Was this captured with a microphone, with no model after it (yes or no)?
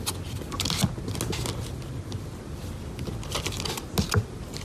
yes